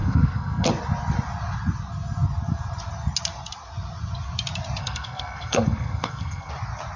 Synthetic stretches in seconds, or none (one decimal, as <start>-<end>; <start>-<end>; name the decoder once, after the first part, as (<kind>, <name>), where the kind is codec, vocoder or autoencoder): 0.0-0.7 (codec, SNAC); 4.8-6.5